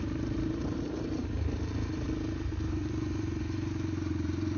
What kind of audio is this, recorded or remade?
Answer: remade